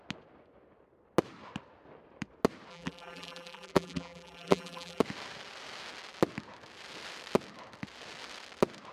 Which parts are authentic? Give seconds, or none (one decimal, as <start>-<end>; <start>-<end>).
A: 0.0-2.7; 5.0-8.9